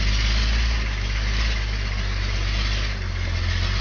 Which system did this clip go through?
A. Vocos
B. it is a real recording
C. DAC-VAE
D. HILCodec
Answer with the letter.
B